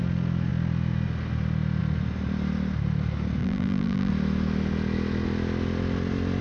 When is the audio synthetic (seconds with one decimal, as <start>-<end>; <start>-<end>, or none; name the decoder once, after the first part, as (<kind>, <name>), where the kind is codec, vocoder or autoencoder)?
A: 3.4-4.1 (vocoder, BigVGAN v2)